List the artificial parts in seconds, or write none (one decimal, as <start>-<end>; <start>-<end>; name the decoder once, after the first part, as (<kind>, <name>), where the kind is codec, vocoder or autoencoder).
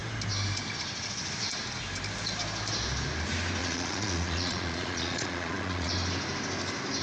3.6-5.9 (vocoder, Vocos)